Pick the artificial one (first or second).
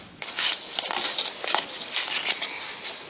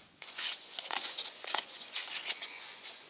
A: second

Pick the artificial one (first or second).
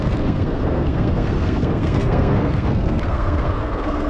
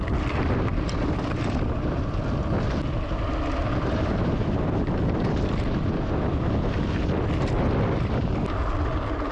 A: first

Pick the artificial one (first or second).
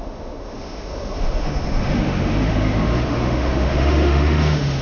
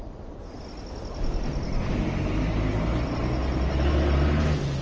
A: first